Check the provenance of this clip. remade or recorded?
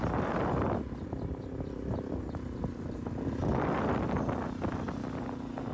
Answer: recorded